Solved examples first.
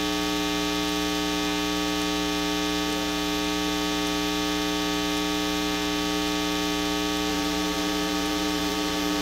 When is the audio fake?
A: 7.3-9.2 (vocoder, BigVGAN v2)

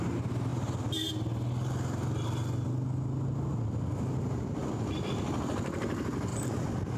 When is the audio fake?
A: 0.5-1.1 (vocoder, BigVGAN v2); 4.6-5.1; 6.3-7.0

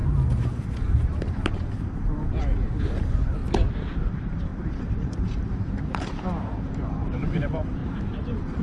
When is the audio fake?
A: 0.0-3.4 (vocoder, BigVGAN v2); 4.1-8.6

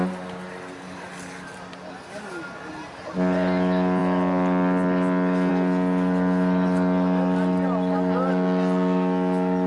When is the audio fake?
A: none

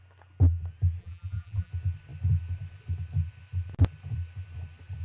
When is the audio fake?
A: 1.0-1.7 (vocoder, BigVGAN v2)

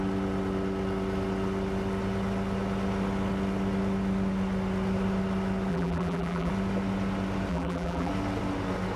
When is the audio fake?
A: 5.7-6.5 (vocoder, BigVGAN v2); 7.5-8.1

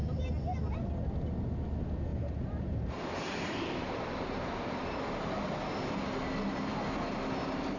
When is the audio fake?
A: 2.1-5.0 (vocoder, BigVGAN v2)

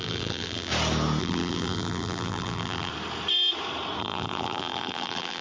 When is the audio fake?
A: 0.0-0.7 (vocoder, BigVGAN v2); 1.2-2.9; 4.0-5.4